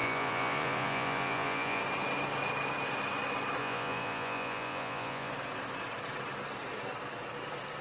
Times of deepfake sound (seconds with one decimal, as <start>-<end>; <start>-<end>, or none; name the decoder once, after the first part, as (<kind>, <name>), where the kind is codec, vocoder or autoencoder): 0.0-1.8 (vocoder, Vocos); 3.6-5.3